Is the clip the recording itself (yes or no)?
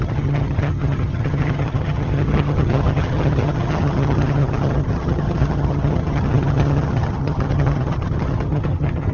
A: no